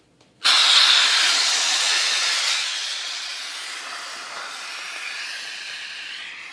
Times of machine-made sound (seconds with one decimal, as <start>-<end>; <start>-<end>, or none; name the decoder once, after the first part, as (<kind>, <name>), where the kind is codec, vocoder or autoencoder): 0.0-0.6 (vocoder, Vocos); 1.3-3.3; 6.1-6.5